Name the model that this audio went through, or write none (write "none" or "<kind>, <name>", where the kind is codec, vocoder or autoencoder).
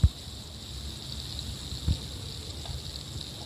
none